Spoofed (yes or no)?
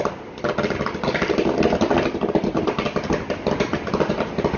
no